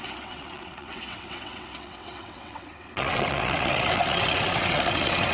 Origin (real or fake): fake